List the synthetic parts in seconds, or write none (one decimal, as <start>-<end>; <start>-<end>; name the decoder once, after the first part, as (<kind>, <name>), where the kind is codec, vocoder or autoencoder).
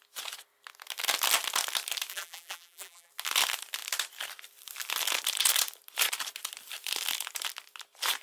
2.1-3.1 (vocoder, BigVGAN v2)